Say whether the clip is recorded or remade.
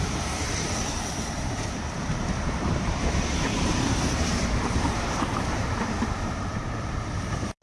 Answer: remade